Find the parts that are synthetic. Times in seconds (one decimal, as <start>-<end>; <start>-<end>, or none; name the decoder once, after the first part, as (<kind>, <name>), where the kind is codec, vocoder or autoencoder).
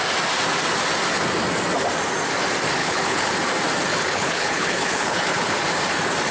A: 2.8-3.3 (codec, HILCodec); 3.9-5.6